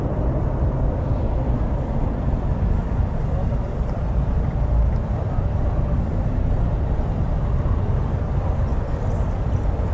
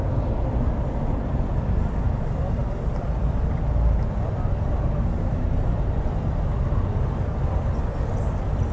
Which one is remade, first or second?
first